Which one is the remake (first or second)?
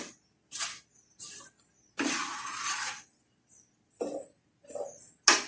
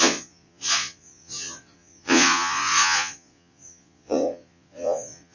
second